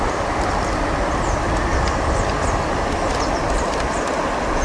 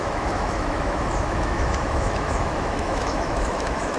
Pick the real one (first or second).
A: first